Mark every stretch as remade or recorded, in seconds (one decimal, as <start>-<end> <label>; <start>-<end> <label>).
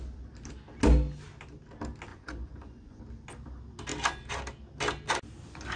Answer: 0.0-2.1 recorded; 2.1-3.0 remade; 3.0-5.8 recorded